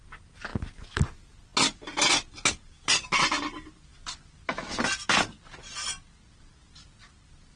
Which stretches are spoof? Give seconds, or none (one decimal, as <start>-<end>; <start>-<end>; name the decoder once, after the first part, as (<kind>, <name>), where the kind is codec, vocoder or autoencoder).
none